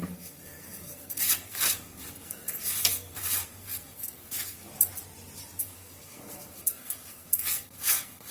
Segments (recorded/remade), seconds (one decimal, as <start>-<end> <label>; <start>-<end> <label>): 0.0-4.7 remade; 4.7-5.6 recorded; 5.6-8.3 remade

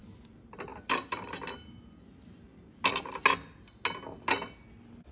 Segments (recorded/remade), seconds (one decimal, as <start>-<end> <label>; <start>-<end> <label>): 0.0-5.1 recorded

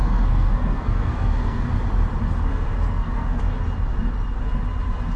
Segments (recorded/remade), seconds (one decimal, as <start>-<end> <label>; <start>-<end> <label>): 0.0-1.6 remade; 1.6-2.5 recorded; 2.5-3.4 remade; 3.4-5.2 recorded